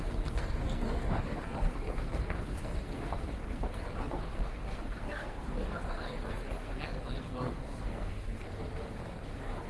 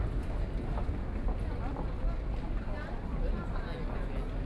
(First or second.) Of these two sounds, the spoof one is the first